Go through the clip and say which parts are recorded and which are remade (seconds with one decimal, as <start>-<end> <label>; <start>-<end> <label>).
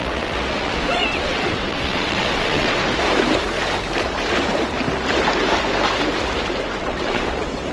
0.0-2.8 remade; 2.8-6.8 recorded; 6.8-7.7 remade